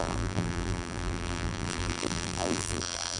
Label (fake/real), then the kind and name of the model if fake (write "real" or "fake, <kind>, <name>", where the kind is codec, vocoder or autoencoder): fake, vocoder, BigVGAN v2